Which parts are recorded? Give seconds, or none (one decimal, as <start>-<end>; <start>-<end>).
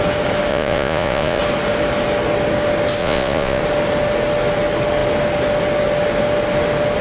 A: 0.0-0.5; 1.4-3.0; 3.6-7.0